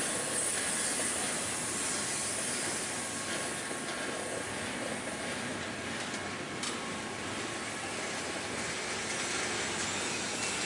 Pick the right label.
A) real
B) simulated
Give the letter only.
A